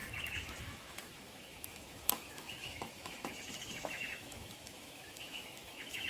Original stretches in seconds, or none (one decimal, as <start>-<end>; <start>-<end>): 0.0-0.6